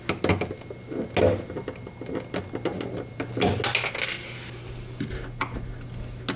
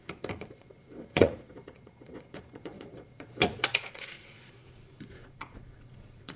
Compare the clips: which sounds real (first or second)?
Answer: first